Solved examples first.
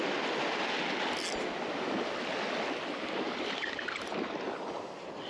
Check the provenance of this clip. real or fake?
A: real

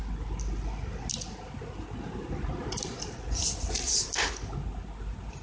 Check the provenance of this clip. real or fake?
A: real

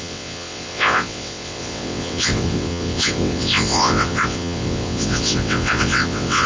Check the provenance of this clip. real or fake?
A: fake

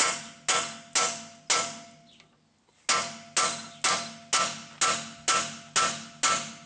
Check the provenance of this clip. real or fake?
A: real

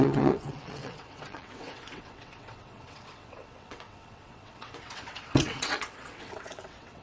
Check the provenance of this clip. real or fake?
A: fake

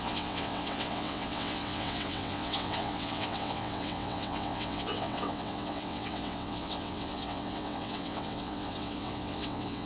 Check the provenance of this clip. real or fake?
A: fake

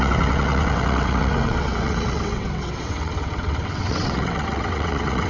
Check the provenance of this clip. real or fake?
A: fake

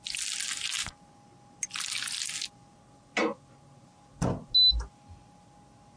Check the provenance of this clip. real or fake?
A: real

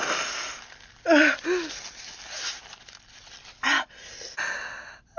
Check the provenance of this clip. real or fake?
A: real